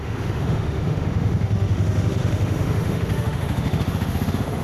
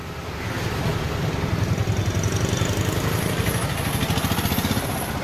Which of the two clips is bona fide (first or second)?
second